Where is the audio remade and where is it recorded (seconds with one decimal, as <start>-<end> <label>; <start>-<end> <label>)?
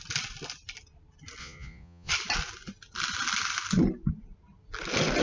0.0-1.4 recorded; 1.4-2.1 remade; 2.1-5.2 recorded